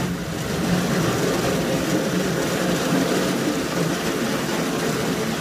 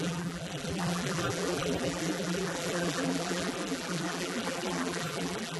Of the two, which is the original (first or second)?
first